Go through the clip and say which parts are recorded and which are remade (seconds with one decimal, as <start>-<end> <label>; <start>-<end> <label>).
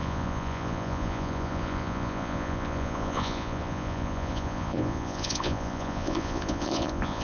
0.0-7.2 remade